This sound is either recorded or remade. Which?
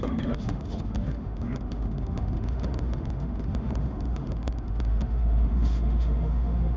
remade